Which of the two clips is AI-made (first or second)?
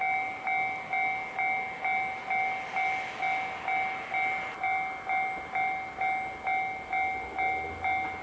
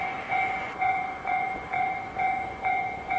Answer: second